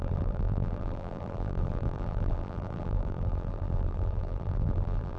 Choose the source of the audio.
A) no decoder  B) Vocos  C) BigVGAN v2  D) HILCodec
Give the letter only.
C